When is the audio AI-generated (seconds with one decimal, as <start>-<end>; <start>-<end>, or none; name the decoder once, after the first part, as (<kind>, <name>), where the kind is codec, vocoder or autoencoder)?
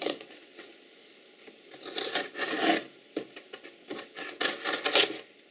0.0-0.7 (vocoder, WaveNeXt); 4.0-4.4